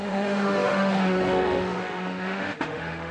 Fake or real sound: fake